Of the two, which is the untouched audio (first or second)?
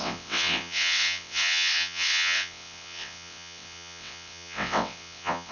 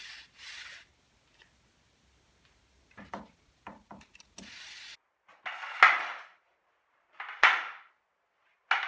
second